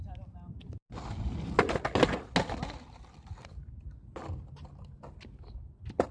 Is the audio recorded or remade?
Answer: recorded